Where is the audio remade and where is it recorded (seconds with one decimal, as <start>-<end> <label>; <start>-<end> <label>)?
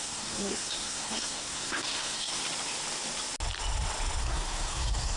0.0-2.4 remade; 2.4-4.2 recorded; 4.2-5.2 remade